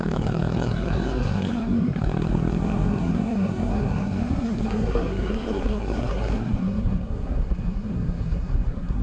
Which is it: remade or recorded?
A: remade